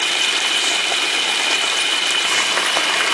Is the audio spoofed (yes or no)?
no